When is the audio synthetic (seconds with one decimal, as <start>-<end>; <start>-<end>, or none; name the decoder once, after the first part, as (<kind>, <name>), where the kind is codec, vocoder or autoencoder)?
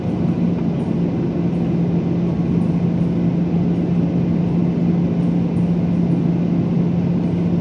none